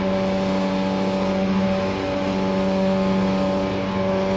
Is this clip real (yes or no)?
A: yes